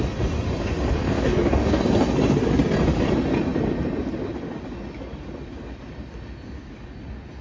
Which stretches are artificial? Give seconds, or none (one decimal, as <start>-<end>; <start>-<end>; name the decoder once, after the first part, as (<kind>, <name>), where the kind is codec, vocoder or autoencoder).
1.0-1.8 (codec, DAC)